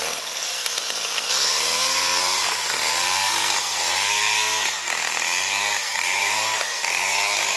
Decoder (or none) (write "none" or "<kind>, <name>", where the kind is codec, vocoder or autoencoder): codec, SNAC